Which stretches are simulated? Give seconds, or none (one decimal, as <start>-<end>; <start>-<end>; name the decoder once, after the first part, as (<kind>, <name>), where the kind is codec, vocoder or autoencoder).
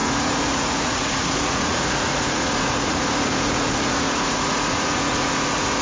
0.0-5.8 (vocoder, Vocos)